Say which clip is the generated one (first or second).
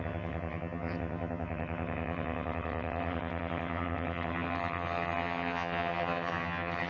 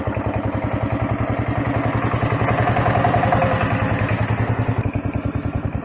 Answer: first